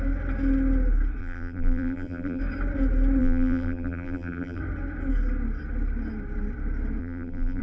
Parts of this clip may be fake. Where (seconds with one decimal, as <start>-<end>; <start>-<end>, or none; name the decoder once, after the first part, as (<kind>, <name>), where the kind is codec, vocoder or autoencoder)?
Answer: 1.2-2.4 (vocoder, BigVGAN v2); 3.2-4.6; 7.0-7.6

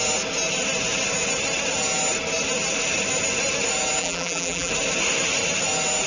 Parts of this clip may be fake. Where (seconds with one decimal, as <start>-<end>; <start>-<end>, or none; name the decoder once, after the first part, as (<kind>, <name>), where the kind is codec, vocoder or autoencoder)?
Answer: 4.0-4.7 (vocoder, BigVGAN v2)

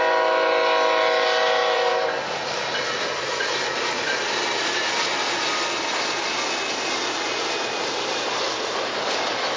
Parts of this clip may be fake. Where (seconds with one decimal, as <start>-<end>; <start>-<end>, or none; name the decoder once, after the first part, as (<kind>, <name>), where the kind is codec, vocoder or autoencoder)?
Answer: 1.6-4.9 (vocoder, BigVGAN v2)

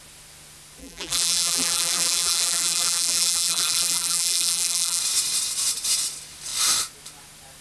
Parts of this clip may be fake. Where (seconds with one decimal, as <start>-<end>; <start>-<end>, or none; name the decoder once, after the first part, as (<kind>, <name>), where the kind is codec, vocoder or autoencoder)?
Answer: 0.8-5.0 (vocoder, BigVGAN v2)

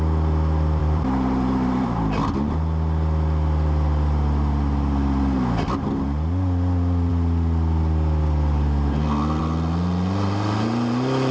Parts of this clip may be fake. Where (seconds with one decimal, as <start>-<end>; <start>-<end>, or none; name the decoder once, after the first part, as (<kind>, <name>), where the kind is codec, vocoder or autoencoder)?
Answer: 0.8-2.5 (vocoder, BigVGAN v2)